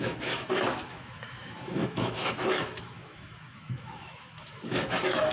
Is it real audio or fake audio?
fake